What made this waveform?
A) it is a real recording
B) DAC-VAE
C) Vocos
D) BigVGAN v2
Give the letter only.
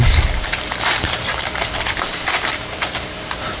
D